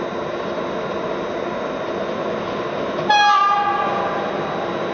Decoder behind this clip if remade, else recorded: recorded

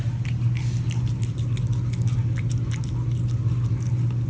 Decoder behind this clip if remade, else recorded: recorded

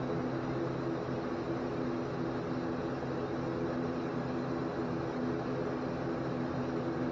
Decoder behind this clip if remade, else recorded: recorded